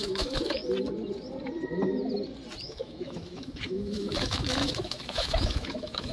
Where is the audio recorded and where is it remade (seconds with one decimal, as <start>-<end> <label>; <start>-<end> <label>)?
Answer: 0.0-0.6 remade; 0.6-2.6 recorded; 2.6-6.1 remade